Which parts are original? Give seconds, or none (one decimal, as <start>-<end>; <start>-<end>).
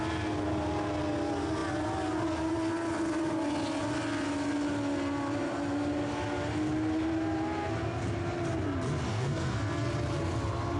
0.0-9.1; 9.9-10.8